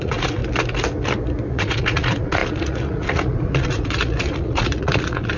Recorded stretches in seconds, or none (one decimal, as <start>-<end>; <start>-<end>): 0.4-1.5